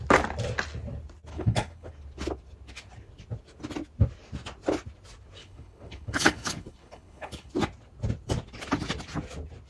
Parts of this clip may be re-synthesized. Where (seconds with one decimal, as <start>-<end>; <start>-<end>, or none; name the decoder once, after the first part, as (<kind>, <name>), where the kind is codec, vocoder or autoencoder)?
1.3-1.9 (codec, HILCodec); 5.4-7.5